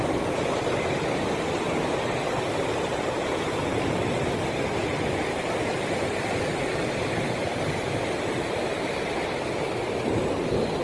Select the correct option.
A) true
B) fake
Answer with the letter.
A